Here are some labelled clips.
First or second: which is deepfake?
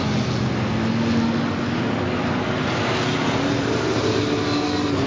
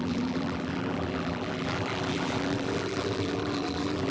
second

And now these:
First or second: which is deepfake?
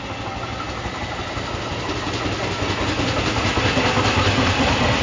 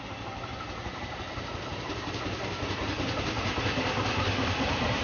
second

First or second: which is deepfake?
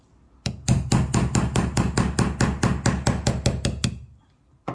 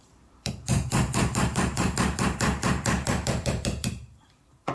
second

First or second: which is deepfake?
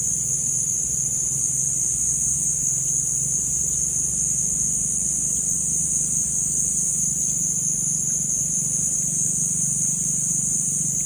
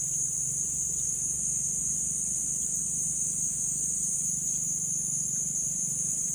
second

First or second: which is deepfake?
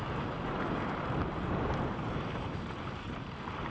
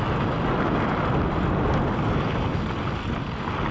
first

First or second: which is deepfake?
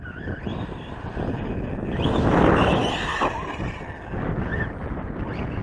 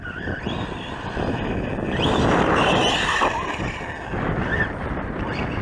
second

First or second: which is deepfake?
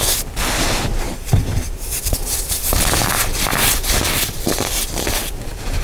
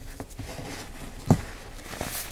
first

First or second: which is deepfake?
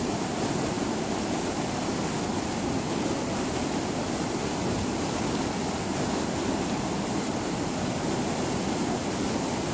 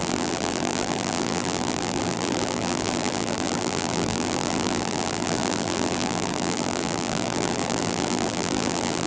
second